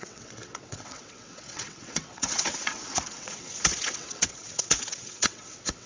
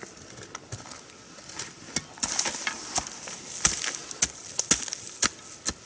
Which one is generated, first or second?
first